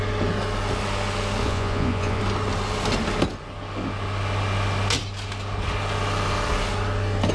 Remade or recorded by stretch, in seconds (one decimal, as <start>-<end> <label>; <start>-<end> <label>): 0.0-1.4 recorded; 1.4-2.2 remade; 2.2-7.3 recorded